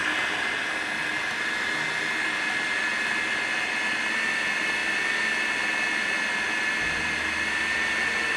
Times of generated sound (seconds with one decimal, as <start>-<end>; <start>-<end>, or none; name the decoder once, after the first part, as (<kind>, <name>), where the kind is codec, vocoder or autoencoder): none